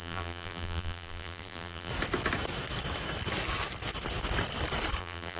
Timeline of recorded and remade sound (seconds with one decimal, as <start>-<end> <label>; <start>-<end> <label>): 0.0-1.9 remade; 1.9-5.0 recorded; 5.0-5.4 remade

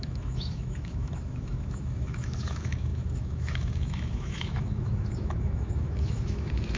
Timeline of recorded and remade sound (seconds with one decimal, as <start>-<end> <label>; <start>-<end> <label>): 0.0-6.8 remade

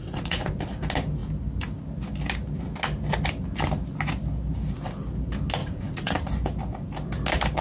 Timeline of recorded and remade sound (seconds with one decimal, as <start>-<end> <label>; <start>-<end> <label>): 0.0-0.5 remade; 0.5-5.6 recorded; 5.6-6.3 remade; 6.3-7.6 recorded

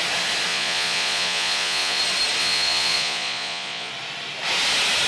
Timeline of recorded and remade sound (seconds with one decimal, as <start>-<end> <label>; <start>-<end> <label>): 0.0-0.5 recorded; 0.5-2.0 remade; 2.0-2.4 recorded; 2.4-3.9 remade; 3.9-5.1 recorded

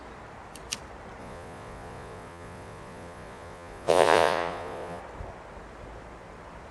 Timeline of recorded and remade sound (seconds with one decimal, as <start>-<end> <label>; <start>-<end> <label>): 0.0-1.2 recorded; 1.2-5.0 remade; 5.0-6.7 recorded

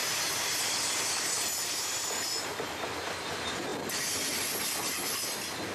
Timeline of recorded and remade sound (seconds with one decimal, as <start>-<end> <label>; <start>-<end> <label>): 0.0-5.7 recorded

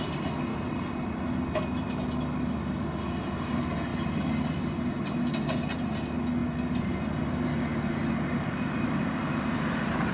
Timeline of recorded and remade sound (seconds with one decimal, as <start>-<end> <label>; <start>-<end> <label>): 0.0-10.1 recorded